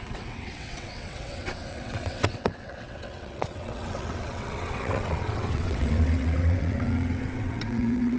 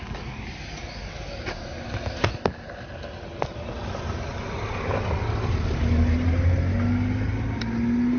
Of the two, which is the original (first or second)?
second